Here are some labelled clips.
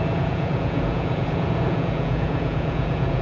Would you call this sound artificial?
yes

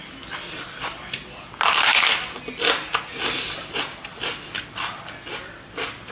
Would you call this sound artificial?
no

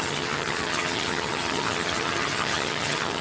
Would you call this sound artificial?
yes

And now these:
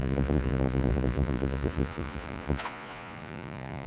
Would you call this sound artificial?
yes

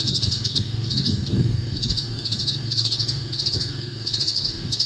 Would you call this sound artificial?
yes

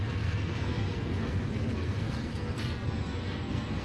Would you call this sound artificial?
yes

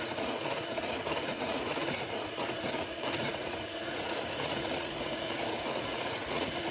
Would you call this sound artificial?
yes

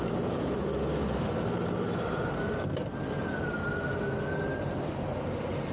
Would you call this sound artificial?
no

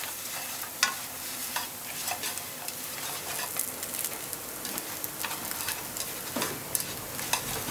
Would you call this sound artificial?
no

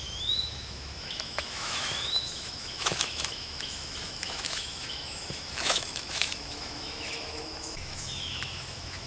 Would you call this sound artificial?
yes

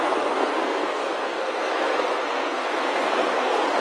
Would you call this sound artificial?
yes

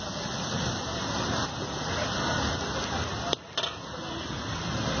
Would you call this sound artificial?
no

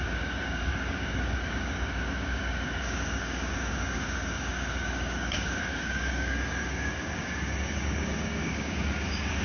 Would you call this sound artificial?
yes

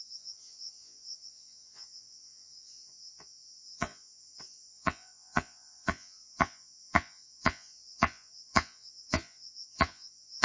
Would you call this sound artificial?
yes